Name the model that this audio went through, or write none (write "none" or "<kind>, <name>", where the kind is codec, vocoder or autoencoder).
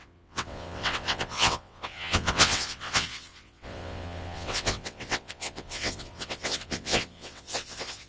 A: vocoder, WaveNeXt